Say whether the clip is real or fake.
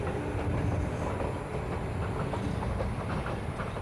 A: real